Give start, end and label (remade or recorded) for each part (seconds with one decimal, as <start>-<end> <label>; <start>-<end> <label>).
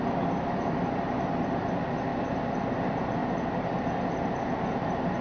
0.0-5.2 recorded